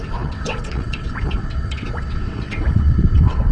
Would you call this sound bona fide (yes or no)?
no